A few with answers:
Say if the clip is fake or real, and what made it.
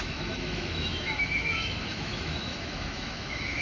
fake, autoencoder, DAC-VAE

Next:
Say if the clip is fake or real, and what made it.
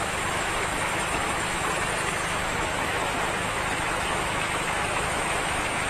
fake, autoencoder, DAC-VAE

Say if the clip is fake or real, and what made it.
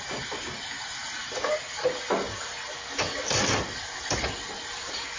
real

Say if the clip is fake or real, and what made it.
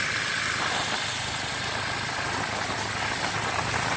real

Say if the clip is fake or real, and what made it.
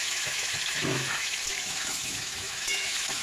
fake, autoencoder, DAC-VAE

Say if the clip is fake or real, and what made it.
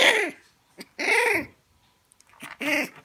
real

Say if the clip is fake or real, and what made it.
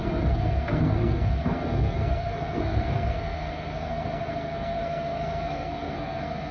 fake, codec, SNAC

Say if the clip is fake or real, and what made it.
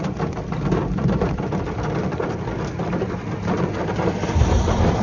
fake, vocoder, BigVGAN v2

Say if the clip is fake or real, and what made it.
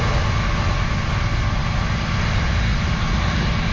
real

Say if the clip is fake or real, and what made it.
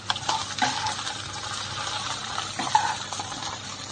real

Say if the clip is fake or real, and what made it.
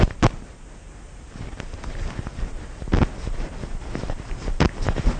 real